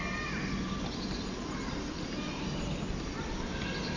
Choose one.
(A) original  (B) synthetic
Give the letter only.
A